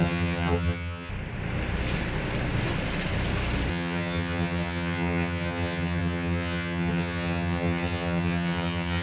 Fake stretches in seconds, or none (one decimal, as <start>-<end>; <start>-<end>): 0.0-1.1; 3.7-9.0

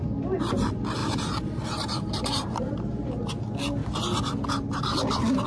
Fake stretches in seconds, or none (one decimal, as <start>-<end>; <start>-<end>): 1.0-3.3

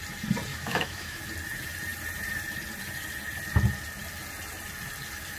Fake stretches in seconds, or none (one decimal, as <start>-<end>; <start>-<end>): 0.5-1.2

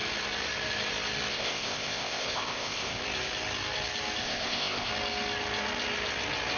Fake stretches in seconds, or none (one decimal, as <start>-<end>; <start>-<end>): 1.3-3.0; 4.2-4.9

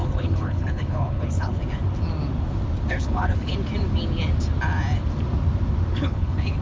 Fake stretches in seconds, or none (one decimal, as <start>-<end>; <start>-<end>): 0.0-1.6; 2.9-3.5; 5.9-6.6

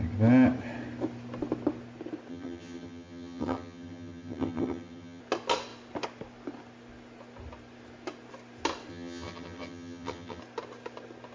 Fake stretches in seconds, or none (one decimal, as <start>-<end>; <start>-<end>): 2.3-5.2; 8.9-10.4

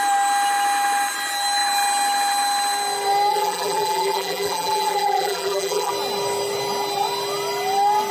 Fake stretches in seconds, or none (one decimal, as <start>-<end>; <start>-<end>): 3.3-5.9

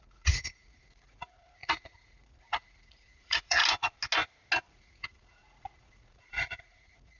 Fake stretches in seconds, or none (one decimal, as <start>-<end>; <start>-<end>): 0.0-3.6; 4.7-7.2